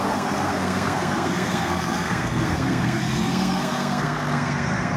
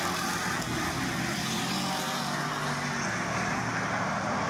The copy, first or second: first